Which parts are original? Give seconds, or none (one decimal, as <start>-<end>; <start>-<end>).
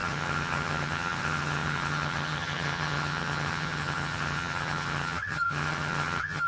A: none